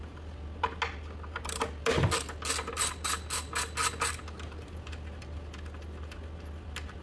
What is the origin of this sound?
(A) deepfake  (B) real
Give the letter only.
B